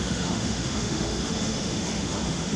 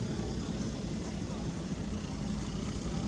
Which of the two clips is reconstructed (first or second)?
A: first